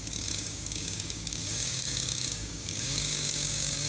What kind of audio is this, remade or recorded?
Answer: remade